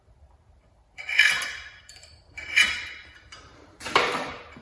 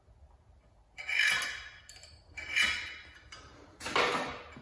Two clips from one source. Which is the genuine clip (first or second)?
second